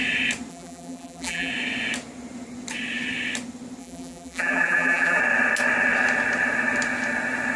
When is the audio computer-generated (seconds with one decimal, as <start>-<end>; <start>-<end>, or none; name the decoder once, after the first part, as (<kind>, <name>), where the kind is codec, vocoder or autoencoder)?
0.5-1.5 (vocoder, BigVGAN v2); 3.8-5.2